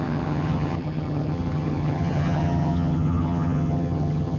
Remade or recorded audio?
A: remade